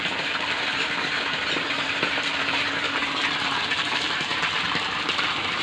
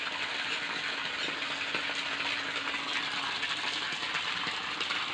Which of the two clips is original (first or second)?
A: second